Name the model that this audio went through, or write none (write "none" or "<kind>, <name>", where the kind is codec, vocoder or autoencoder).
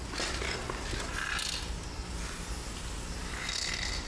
none